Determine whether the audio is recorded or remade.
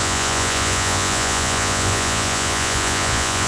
remade